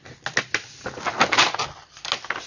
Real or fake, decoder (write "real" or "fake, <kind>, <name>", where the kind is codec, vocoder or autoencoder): real